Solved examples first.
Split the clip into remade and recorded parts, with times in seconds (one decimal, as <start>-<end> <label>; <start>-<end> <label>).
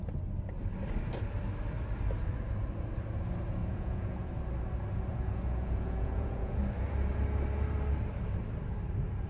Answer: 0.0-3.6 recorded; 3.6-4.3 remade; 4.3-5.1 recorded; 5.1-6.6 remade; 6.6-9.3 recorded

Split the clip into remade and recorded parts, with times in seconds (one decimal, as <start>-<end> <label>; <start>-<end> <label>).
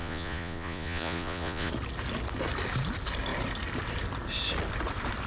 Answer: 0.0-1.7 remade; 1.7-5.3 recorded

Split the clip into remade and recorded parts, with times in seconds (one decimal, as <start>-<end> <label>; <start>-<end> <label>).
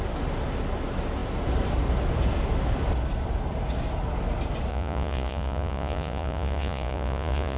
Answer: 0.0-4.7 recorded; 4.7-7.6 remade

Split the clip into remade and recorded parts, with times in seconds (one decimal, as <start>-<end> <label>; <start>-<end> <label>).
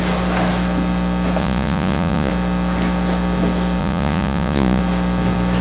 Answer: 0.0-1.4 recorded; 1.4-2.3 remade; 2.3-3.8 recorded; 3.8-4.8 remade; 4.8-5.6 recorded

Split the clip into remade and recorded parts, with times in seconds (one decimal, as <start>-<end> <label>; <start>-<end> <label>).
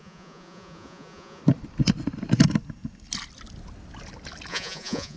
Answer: 0.0-1.4 remade; 1.4-4.5 recorded; 4.5-5.2 remade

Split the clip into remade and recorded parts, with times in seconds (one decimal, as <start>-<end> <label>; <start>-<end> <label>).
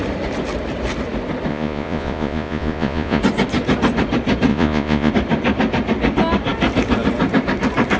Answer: 0.0-1.5 recorded; 1.5-3.2 remade; 3.2-4.5 recorded; 4.5-5.1 remade; 5.1-8.0 recorded